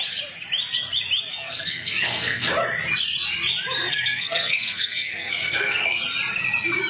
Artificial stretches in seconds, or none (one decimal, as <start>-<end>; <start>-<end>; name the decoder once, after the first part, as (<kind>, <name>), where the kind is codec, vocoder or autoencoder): 1.3-2.5 (codec, SNAC); 3.8-6.0